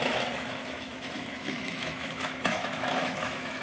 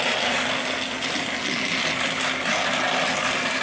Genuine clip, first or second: second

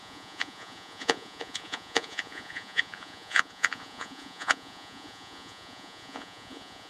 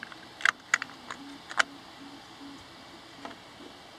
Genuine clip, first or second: second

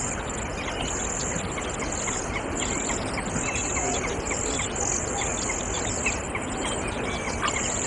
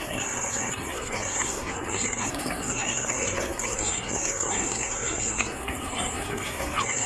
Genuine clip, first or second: first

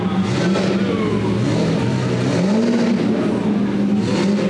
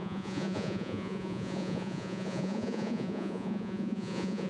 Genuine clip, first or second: first